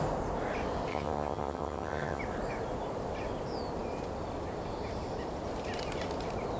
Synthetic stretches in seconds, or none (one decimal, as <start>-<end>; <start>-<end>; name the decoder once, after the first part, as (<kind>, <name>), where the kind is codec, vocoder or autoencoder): 0.9-2.2 (vocoder, HiFi-GAN)